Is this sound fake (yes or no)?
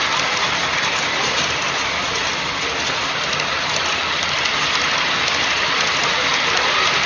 no